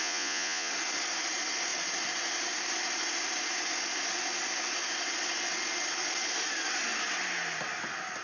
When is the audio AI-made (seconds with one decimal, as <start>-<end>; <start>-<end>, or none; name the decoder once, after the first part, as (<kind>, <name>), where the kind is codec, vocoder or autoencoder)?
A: 0.0-0.7 (vocoder, Vocos)